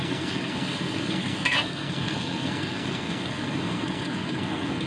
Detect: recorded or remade remade